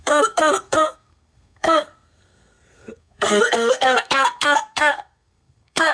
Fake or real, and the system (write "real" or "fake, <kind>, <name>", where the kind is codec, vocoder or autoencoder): fake, codec, SNAC